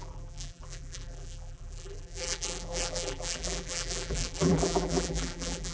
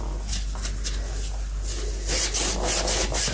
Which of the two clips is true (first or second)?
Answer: second